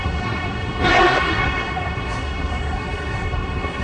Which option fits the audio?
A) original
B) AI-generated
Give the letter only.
B